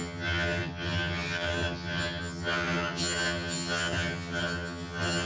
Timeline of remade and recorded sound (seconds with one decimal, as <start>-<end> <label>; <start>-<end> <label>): 0.0-5.3 remade

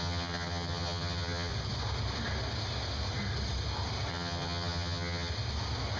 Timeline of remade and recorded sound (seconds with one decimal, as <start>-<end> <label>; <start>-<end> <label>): 0.0-1.5 remade; 1.5-4.1 recorded; 4.1-5.3 remade; 5.3-6.0 recorded

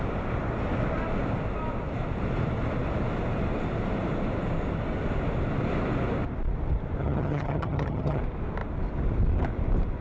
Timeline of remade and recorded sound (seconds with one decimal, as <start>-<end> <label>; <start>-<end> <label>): 0.0-7.0 recorded; 7.0-8.2 remade; 8.2-10.0 recorded